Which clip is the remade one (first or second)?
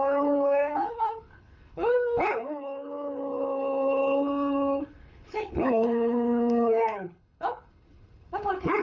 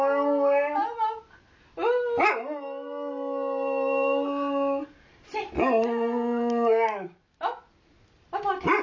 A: first